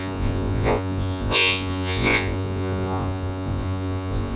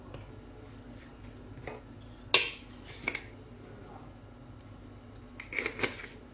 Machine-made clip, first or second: first